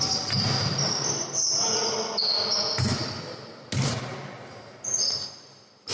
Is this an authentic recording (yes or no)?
yes